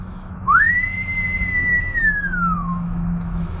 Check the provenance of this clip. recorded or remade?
remade